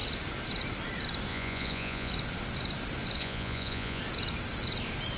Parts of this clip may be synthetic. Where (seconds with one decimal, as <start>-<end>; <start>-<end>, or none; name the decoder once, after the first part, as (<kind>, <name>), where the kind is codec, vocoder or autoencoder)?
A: 1.3-2.1 (vocoder, Vocos); 3.2-4.0